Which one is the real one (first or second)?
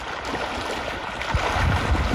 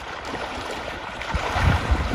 first